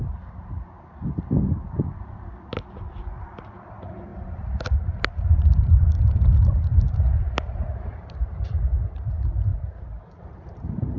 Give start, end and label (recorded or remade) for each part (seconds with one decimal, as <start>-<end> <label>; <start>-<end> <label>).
0.0-4.1 remade; 4.1-5.4 recorded; 5.4-6.7 remade; 6.7-7.5 recorded; 7.5-9.5 remade; 9.5-10.2 recorded; 10.2-11.0 remade